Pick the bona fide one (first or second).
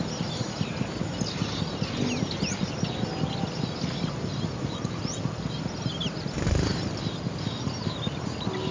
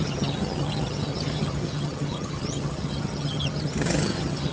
first